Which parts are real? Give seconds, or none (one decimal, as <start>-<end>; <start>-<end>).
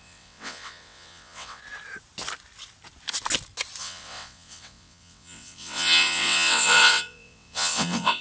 1.6-3.8